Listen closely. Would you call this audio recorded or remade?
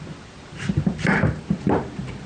remade